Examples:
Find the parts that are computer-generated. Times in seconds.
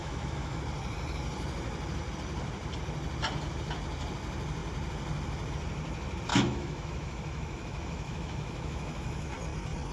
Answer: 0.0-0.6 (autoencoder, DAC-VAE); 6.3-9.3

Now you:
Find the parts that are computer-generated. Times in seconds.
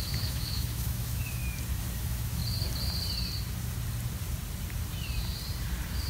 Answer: 0.0-1.4 (autoencoder, DAC-VAE); 2.0-2.4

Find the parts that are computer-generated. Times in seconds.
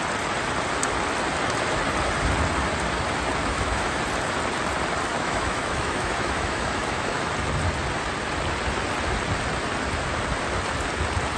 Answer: 3.4-4.0 (autoencoder, DAC-VAE); 5.1-7.3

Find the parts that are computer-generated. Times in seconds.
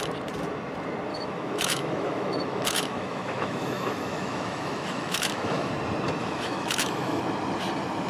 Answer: 1.1-5.7 (autoencoder, DAC-VAE); 6.2-7.2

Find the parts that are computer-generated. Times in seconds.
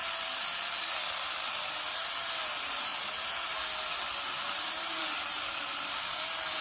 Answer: none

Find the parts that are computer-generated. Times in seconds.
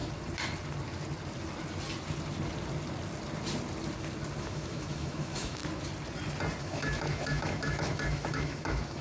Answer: 4.4-5.6 (autoencoder, DAC-VAE); 6.6-9.0